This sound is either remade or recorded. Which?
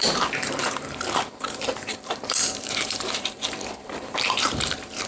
remade